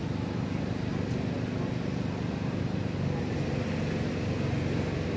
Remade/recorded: recorded